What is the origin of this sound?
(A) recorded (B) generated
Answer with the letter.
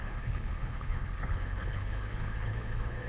B